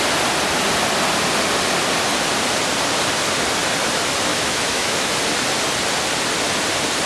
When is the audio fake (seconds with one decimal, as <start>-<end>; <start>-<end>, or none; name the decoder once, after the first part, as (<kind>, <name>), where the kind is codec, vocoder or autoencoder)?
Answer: 4.3-5.1 (autoencoder, DAC-VAE)